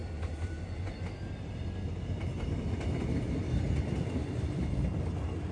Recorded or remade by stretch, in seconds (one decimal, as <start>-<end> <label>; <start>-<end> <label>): 0.0-5.5 recorded